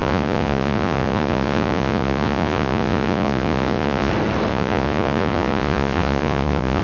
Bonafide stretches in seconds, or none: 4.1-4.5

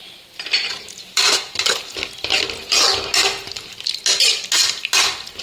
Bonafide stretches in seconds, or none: 0.0-0.7; 1.9-5.4

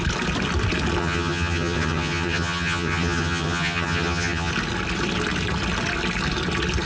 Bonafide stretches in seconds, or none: 0.0-1.0; 4.5-6.8